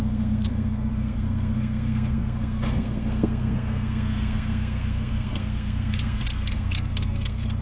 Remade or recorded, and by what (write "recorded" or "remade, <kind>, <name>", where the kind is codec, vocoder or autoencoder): remade, codec, SNAC